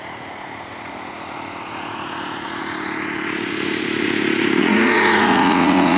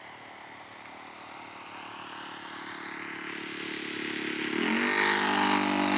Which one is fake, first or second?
first